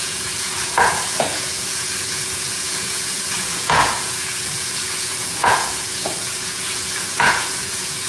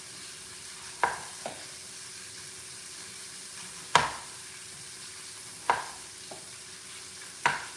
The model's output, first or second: first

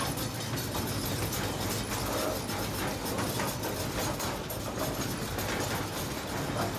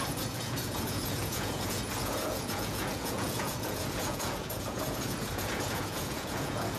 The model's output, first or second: second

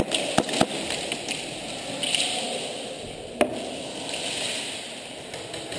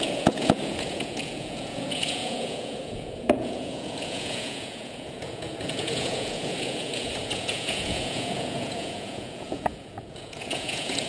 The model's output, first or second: second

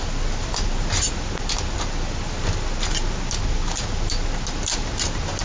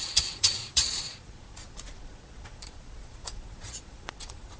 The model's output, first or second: second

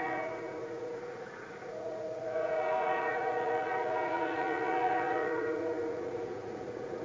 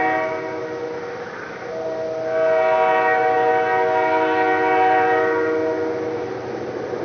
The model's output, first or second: first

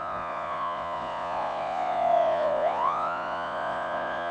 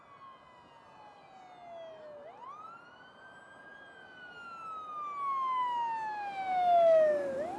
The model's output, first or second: first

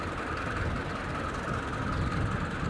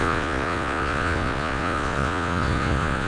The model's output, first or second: second